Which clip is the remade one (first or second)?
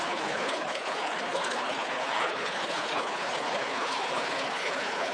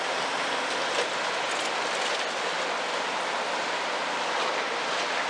first